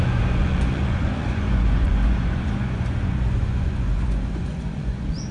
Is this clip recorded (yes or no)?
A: no